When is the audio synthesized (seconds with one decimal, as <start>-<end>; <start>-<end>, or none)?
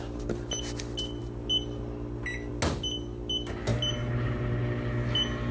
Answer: none